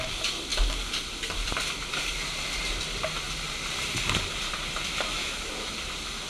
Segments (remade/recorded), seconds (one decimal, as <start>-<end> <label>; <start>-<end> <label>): 0.0-5.2 recorded; 5.2-5.7 remade; 5.7-6.3 recorded